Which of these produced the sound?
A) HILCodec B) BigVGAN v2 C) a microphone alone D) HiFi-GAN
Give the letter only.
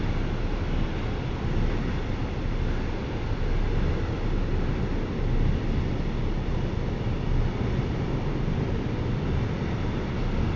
C